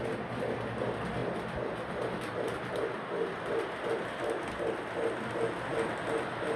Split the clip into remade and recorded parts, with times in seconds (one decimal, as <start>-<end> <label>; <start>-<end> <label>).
0.0-6.6 recorded